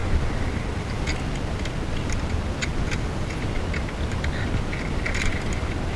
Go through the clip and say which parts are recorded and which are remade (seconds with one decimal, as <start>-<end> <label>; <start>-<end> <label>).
0.0-6.0 recorded